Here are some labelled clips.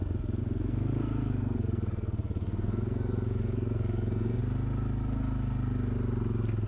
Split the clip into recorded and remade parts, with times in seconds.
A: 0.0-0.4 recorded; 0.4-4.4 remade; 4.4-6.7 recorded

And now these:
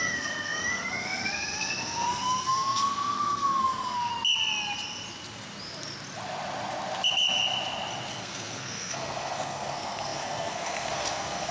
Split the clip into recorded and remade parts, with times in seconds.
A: 0.0-4.1 remade; 4.1-8.1 recorded; 8.1-11.5 remade

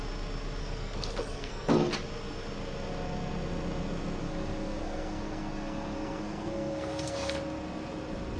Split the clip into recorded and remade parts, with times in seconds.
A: 0.0-0.6 recorded; 0.6-1.9 remade; 1.9-4.2 recorded; 4.2-7.4 remade; 7.4-8.4 recorded

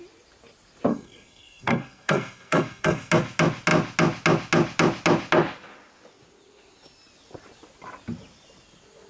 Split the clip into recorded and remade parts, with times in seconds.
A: 0.0-0.9 recorded; 0.9-3.1 remade; 3.1-9.1 recorded

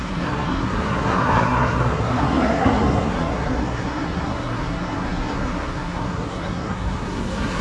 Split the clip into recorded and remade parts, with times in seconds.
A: 0.0-7.6 remade